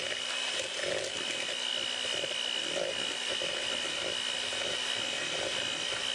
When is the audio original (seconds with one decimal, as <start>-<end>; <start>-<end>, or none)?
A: 0.0-6.1